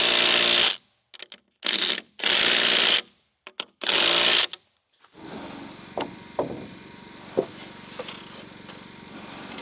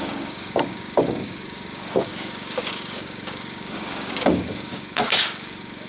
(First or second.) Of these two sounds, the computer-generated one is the second